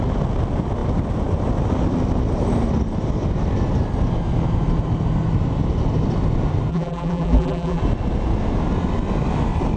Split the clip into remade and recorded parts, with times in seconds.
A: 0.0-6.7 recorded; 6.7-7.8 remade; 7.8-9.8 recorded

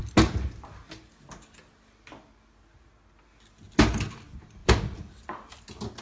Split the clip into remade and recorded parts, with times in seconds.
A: 0.0-4.6 recorded; 4.6-5.5 remade; 5.5-6.0 recorded

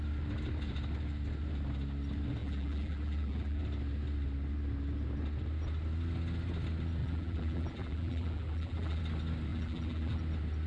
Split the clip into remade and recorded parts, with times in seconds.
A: 0.0-2.4 recorded; 2.4-3.6 remade; 3.6-7.0 recorded; 7.0-9.0 remade; 9.0-9.5 recorded; 9.5-10.2 remade; 10.2-10.7 recorded

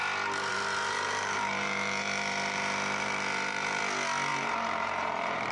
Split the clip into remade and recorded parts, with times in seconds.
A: 0.0-0.5 recorded; 0.5-3.8 remade; 3.8-4.3 recorded; 4.3-5.5 remade

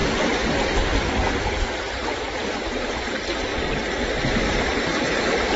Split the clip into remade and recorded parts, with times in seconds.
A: 0.0-0.7 recorded; 0.7-1.2 remade; 1.2-1.8 recorded; 1.8-3.5 remade; 3.5-4.5 recorded; 4.5-5.6 remade

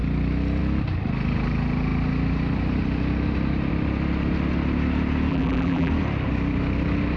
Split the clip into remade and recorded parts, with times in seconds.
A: 0.0-5.3 recorded; 5.3-5.9 remade; 5.9-7.2 recorded